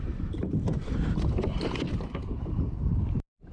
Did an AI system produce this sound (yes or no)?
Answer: yes